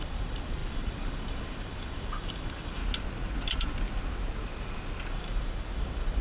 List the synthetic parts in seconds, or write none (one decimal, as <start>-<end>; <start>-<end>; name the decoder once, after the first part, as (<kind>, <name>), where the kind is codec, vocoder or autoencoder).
0.0-2.8 (vocoder, BigVGAN v2); 5.1-6.2